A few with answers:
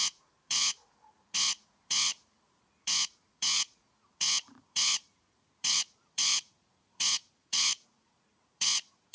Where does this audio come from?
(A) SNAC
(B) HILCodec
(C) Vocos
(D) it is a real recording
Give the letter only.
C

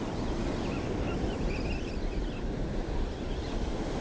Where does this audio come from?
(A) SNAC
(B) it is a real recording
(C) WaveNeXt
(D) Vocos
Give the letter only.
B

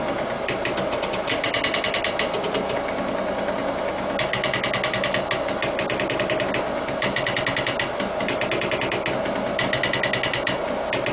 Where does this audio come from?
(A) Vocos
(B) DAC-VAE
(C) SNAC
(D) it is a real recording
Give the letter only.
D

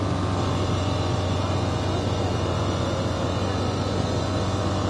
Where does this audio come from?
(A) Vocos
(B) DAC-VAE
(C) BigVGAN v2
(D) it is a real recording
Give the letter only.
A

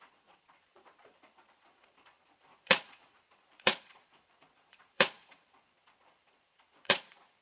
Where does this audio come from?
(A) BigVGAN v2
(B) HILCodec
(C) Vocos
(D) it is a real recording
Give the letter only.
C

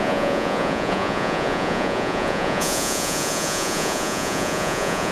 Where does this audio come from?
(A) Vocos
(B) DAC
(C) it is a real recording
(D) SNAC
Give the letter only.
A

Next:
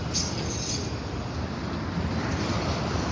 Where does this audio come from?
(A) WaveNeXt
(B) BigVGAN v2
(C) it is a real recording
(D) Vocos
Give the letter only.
C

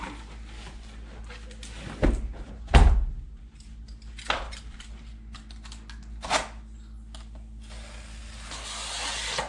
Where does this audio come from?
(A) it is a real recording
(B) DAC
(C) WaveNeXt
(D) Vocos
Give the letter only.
A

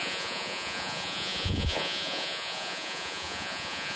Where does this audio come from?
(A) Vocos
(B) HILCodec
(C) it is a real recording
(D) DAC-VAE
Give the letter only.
A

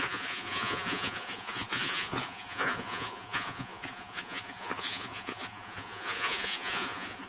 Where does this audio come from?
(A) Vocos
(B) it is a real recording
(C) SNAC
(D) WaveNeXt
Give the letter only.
A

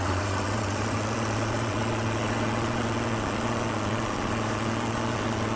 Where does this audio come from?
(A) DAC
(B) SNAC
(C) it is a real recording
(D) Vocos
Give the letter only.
D